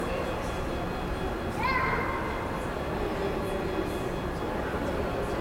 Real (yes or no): yes